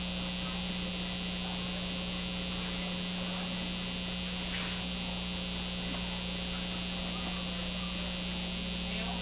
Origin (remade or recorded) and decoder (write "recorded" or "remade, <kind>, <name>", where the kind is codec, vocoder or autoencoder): recorded